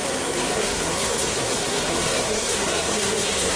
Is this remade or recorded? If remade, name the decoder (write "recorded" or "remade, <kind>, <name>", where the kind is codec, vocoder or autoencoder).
remade, codec, SNAC